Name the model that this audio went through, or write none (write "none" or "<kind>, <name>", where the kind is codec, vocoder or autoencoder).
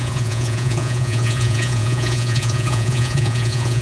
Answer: vocoder, Vocos